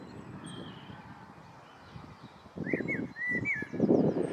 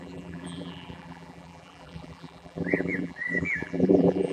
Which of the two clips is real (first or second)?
first